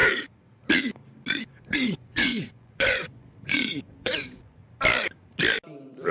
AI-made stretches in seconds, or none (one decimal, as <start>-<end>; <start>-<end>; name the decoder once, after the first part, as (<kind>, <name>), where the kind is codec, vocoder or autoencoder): 1.4-4.6 (vocoder, Vocos)

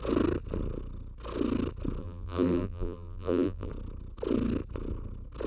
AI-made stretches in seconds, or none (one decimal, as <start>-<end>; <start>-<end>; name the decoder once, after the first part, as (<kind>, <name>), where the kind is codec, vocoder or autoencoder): 2.0-3.7 (vocoder, BigVGAN v2)

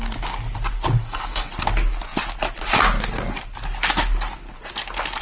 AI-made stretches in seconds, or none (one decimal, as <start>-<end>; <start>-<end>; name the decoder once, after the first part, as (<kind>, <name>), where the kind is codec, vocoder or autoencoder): 1.0-1.5 (codec, DAC)

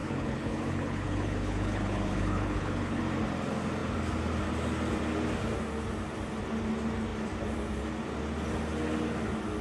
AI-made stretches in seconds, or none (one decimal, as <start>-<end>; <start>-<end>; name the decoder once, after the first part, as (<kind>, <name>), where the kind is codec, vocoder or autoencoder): 0.0-3.0 (codec, HILCodec)

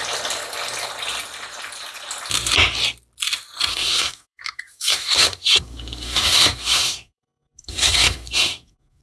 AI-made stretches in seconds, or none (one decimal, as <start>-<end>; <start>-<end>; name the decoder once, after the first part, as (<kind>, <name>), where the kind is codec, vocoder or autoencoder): 3.7-9.0 (codec, SNAC)

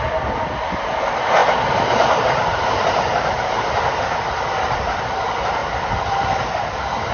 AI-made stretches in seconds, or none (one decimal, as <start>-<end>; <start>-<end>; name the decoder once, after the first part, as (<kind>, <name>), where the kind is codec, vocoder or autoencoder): none

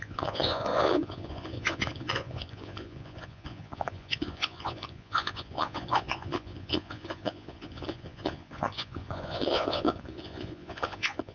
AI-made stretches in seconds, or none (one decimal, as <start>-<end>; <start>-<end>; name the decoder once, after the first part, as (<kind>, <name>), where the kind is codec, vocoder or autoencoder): 0.0-11.3 (vocoder, Vocos)